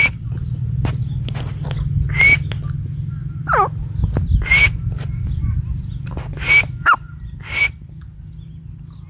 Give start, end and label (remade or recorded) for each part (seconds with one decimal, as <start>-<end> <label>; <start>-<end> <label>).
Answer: 0.0-1.0 remade; 1.0-5.2 recorded; 5.2-7.6 remade; 7.6-9.1 recorded